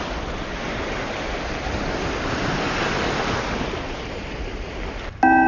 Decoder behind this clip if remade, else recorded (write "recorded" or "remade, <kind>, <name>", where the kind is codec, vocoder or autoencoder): recorded